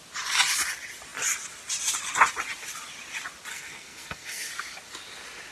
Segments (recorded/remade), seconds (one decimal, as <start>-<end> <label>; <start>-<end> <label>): 0.0-3.5 recorded; 3.5-4.5 remade; 4.5-5.5 recorded